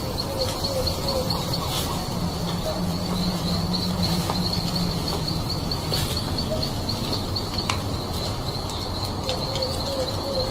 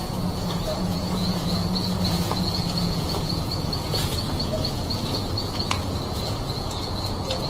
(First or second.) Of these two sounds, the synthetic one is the second